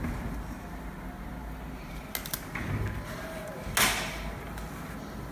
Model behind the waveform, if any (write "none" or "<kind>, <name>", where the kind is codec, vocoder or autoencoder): none